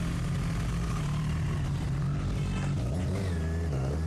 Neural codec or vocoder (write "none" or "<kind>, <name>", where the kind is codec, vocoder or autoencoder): none